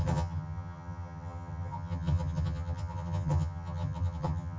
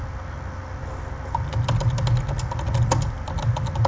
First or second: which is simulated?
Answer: first